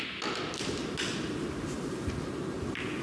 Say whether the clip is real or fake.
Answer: real